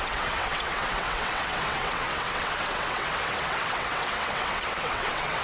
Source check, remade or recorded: remade